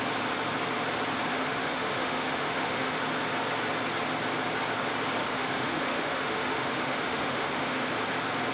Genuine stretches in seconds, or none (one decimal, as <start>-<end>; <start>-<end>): 0.0-1.3; 3.0-5.2; 7.9-8.5